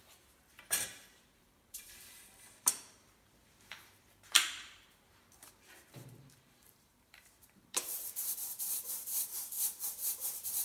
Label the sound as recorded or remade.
remade